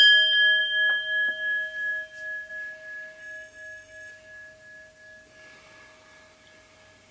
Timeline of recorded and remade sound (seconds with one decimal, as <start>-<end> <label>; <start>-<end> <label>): 0.0-3.2 recorded; 3.2-4.1 remade; 4.1-7.1 recorded